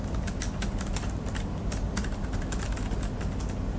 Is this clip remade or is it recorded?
recorded